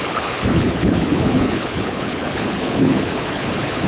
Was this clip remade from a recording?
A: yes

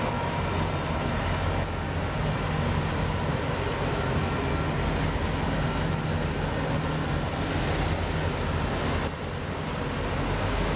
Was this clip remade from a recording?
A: no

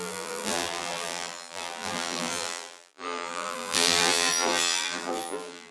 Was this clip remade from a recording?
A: yes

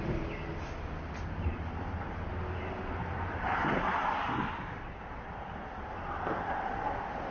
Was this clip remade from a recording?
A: no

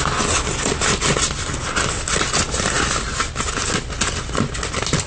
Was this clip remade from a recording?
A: no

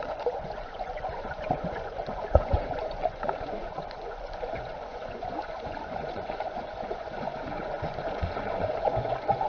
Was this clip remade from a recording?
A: yes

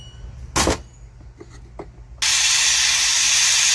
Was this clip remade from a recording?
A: no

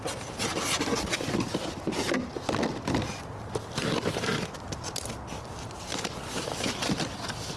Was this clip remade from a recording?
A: no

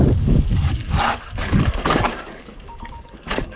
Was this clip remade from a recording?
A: yes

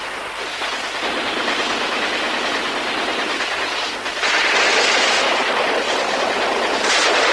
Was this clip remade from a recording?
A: no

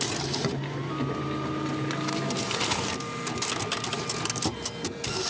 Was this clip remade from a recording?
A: no